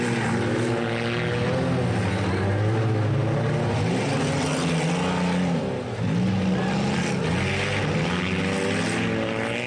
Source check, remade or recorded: recorded